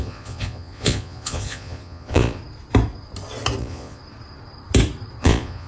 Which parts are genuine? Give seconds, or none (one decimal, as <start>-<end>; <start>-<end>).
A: 2.4-3.6; 4.0-5.2